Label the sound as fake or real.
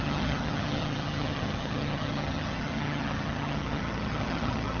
fake